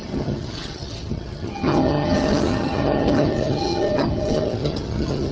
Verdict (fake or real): fake